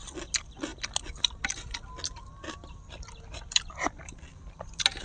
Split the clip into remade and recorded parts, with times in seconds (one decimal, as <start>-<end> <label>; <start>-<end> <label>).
0.0-5.0 recorded